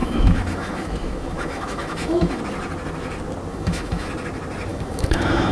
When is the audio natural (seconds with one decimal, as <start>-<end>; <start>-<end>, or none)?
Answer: 2.4-3.5; 4.1-4.7